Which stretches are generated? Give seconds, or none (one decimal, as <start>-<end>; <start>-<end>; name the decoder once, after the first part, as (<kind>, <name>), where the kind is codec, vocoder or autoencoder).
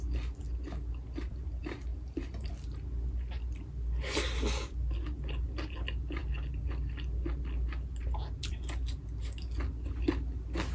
1.9-2.5 (vocoder, BigVGAN v2)